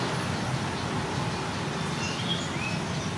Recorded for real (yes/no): yes